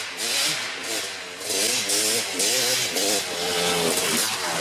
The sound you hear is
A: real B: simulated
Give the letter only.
A